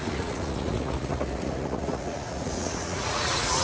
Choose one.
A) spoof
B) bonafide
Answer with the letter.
A